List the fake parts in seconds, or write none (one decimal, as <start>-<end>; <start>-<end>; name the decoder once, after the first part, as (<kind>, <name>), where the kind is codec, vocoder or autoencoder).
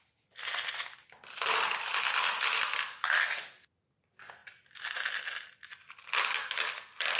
none